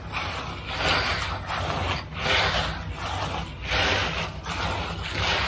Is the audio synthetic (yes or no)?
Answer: no